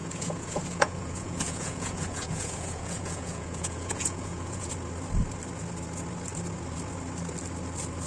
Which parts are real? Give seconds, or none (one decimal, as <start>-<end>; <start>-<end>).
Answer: 4.7-8.1